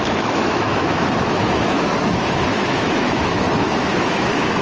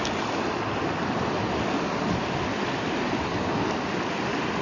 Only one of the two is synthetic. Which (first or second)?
first